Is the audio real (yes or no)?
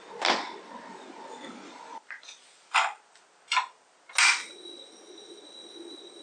yes